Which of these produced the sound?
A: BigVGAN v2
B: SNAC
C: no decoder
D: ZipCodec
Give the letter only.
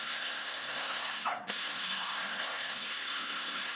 B